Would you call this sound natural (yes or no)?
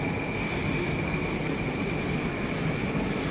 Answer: yes